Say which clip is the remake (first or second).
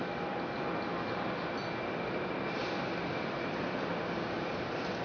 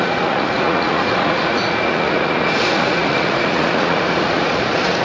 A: second